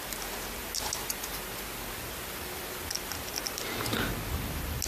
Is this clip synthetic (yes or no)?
no